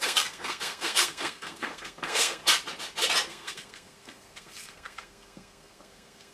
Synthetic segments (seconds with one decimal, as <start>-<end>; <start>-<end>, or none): 0.0-2.4; 3.3-6.3